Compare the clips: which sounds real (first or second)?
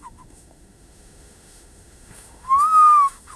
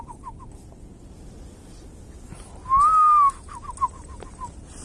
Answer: second